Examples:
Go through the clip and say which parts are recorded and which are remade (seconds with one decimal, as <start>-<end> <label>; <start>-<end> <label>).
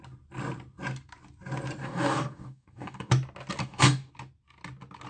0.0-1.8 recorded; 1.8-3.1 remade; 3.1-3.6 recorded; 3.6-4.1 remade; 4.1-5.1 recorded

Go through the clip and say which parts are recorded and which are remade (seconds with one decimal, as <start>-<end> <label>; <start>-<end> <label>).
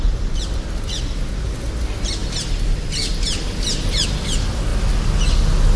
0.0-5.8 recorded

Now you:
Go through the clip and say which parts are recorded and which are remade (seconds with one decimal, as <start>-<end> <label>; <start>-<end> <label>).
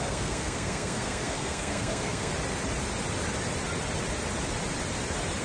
0.0-2.3 remade; 2.3-5.4 recorded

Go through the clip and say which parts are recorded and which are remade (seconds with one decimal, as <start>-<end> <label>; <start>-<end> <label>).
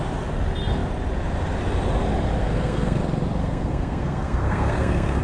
0.0-2.4 recorded; 2.4-3.0 remade; 3.0-3.4 recorded; 3.4-5.2 remade